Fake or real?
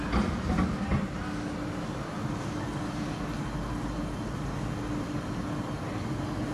real